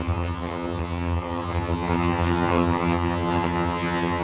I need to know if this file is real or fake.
fake